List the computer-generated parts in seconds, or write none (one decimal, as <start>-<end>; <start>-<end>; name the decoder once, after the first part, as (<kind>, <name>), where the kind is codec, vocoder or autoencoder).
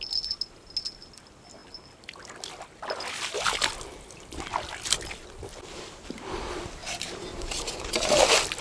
6.8-8.2 (vocoder, BigVGAN v2)